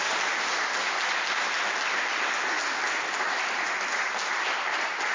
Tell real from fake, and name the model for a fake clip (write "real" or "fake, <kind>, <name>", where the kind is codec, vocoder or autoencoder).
real